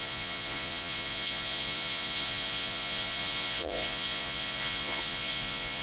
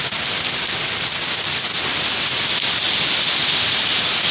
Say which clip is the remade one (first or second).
first